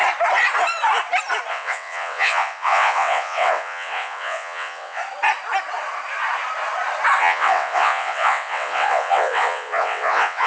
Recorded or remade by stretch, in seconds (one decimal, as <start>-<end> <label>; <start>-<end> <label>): 0.0-1.5 recorded; 1.5-5.0 remade; 5.0-7.2 recorded; 7.2-10.5 remade